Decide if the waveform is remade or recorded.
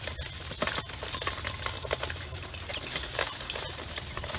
recorded